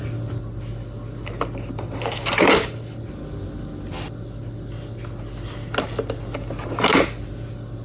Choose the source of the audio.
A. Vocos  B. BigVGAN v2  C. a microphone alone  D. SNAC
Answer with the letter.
C